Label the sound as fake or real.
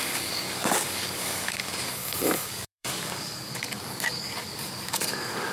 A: fake